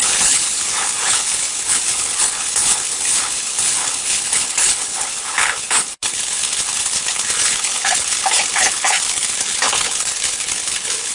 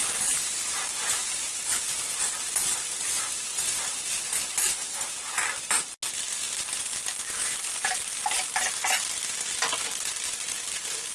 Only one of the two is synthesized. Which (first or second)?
first